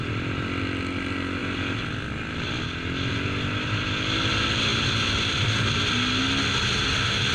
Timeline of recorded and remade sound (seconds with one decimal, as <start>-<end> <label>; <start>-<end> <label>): 0.0-7.3 recorded